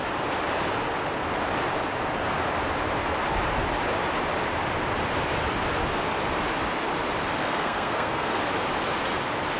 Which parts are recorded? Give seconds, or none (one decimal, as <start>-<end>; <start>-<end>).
0.0-7.4; 8.4-9.6